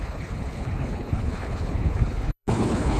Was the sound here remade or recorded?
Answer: remade